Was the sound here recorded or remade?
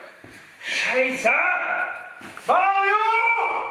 remade